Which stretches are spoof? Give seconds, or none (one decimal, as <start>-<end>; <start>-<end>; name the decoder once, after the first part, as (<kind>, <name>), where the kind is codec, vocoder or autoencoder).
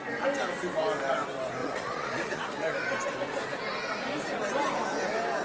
1.6-2.7 (vocoder, Vocos)